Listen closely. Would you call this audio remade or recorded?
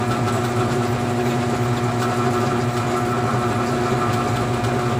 recorded